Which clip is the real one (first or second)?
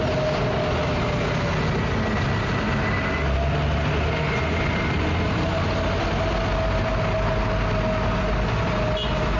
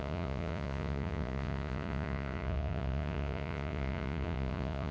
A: first